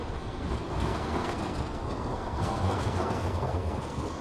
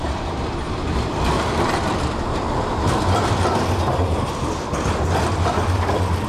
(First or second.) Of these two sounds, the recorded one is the second